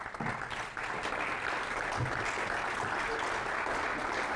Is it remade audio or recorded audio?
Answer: recorded